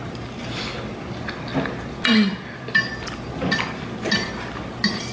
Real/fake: real